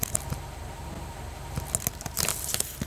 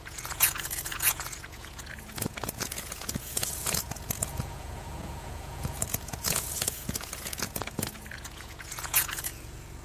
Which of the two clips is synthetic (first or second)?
second